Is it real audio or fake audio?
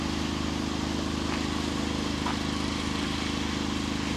real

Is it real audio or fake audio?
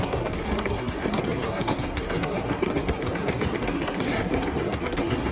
fake